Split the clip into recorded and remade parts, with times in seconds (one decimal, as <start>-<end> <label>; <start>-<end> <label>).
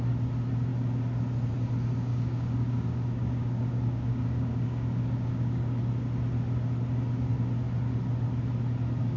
0.0-2.1 recorded; 2.1-5.8 remade; 5.8-9.2 recorded